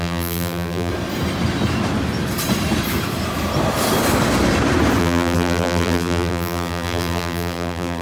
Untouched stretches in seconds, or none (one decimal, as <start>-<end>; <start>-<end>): 0.9-5.0